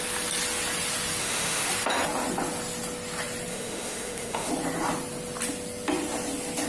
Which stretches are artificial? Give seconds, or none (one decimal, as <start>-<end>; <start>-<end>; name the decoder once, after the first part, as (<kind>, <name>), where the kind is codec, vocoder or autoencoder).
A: 1.2-1.7 (autoencoder, DAC-VAE); 3.5-4.5